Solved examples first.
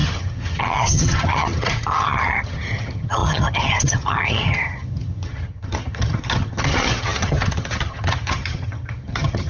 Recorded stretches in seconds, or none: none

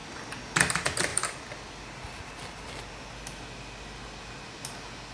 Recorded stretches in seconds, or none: 0.5-1.1; 2.7-5.1